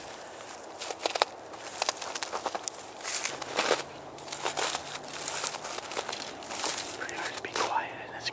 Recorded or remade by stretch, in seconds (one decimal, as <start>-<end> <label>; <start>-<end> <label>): 0.0-8.3 recorded